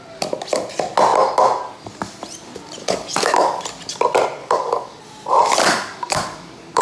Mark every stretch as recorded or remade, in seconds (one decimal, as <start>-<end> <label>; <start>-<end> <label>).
0.0-2.8 recorded; 2.8-3.6 remade; 3.6-4.4 recorded; 4.4-5.0 remade; 5.0-5.6 recorded; 5.6-6.8 remade